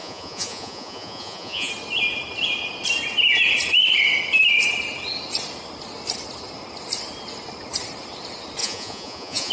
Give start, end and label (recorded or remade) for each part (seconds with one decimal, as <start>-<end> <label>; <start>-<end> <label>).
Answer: 0.0-1.7 remade; 1.7-8.6 recorded; 8.6-9.5 remade